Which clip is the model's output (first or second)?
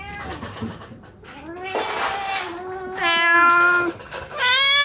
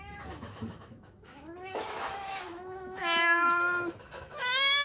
second